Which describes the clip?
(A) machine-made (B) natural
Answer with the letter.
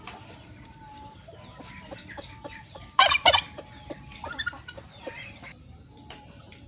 A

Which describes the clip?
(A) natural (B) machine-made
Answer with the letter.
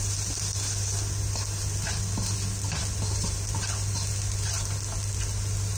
A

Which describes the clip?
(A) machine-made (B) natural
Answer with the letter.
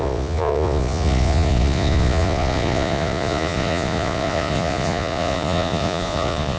A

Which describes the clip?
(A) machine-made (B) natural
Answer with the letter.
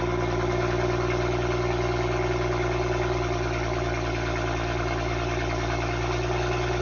B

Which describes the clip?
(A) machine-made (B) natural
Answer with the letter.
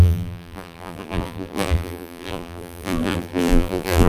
A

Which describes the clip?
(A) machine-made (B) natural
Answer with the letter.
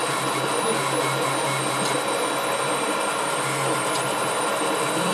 B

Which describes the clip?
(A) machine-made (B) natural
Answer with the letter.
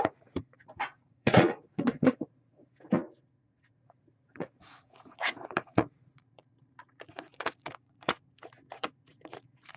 A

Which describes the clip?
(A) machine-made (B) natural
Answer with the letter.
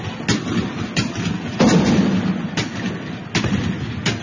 B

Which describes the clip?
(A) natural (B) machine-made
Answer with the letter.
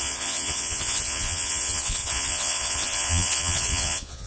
B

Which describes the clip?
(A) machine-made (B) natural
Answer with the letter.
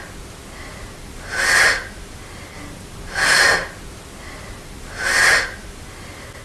B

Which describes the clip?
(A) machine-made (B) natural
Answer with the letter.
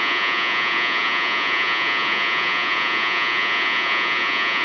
A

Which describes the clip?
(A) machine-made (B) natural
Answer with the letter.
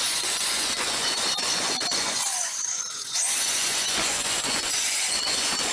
A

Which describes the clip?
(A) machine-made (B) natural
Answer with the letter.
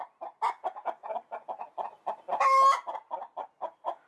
B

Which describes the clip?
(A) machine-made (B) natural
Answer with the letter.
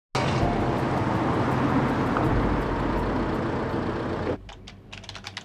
B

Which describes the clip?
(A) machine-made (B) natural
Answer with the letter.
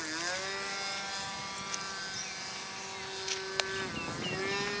B